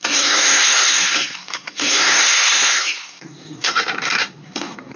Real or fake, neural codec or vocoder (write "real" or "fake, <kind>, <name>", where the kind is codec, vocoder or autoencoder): fake, codec, SNAC